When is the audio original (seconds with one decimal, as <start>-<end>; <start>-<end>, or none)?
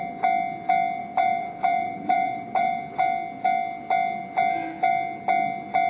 0.0-1.0; 2.8-5.9